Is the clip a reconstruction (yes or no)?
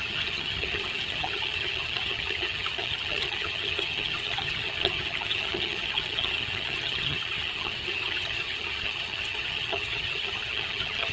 yes